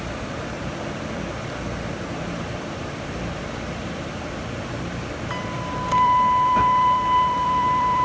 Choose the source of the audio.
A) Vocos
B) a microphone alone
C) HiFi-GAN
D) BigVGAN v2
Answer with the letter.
D